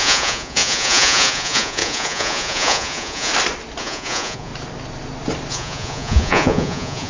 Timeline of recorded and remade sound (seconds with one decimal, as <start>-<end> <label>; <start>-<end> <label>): 0.0-3.3 remade; 3.3-3.8 recorded; 3.8-4.5 remade; 4.5-5.5 recorded; 5.5-7.1 remade

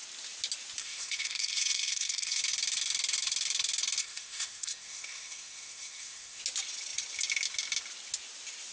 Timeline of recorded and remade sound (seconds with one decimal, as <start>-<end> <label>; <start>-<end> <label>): 0.0-0.8 recorded; 0.8-2.4 remade; 2.4-4.0 recorded; 4.0-6.4 remade; 6.4-8.7 recorded

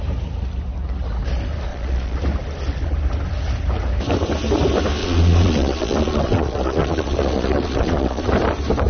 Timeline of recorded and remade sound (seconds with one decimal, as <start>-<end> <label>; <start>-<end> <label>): 0.0-1.7 recorded; 1.7-2.2 remade; 2.2-5.0 recorded; 5.0-8.3 remade; 8.3-8.9 recorded

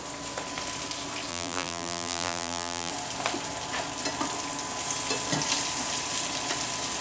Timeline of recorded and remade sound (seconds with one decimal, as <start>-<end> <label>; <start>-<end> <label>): 0.0-1.3 recorded; 1.3-2.9 remade; 2.9-7.0 recorded

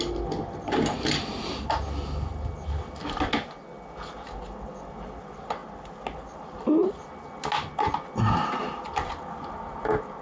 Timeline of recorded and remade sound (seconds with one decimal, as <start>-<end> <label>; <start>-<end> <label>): 0.0-10.2 recorded

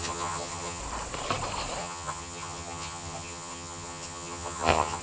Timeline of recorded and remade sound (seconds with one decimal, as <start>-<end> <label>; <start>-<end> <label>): 0.0-0.8 remade; 0.8-1.8 recorded; 1.8-5.0 remade

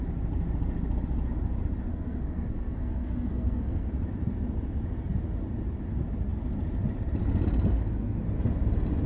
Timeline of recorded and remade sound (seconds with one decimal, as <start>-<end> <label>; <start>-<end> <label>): 0.0-1.9 recorded; 1.9-3.9 remade; 3.9-9.1 recorded

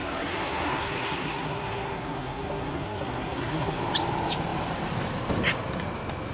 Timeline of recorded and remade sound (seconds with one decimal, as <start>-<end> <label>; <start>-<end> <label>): 0.0-3.8 remade; 3.8-6.3 recorded